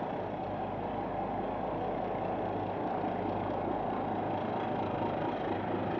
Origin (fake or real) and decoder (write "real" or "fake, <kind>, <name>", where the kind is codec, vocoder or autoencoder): real